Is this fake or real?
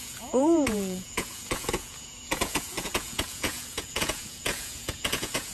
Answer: fake